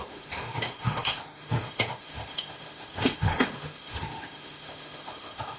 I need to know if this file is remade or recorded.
remade